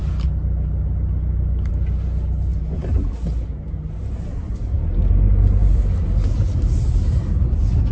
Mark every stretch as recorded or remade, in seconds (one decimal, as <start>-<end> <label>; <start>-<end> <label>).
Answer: 0.0-7.9 recorded